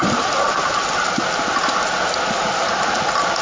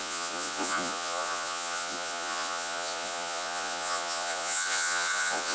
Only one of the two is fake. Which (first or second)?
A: second